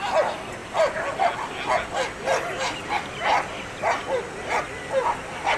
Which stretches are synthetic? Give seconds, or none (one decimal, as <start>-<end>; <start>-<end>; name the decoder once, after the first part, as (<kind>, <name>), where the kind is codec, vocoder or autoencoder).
none